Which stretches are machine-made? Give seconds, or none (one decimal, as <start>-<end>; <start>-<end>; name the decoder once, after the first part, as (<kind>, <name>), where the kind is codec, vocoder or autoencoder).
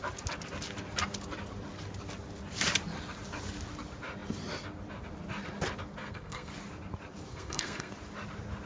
6.0-6.5 (codec, SNAC); 7.3-7.9